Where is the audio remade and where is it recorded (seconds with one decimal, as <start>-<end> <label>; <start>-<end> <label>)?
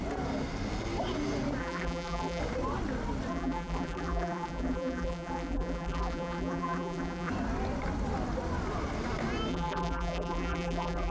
0.0-1.6 recorded; 1.6-2.4 remade; 2.4-3.3 recorded; 3.3-7.3 remade; 7.3-9.5 recorded; 9.5-11.1 remade